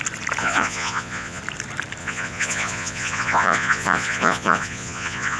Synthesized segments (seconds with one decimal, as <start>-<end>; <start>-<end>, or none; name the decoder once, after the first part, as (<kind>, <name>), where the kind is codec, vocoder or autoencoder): 0.4-1.4 (vocoder, Vocos); 2.0-5.4